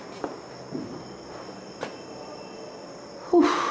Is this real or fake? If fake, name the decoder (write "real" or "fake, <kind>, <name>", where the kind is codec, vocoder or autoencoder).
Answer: real